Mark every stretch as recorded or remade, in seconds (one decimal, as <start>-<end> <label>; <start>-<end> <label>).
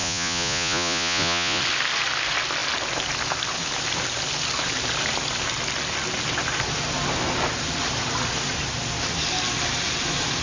0.0-1.6 remade; 1.6-10.4 recorded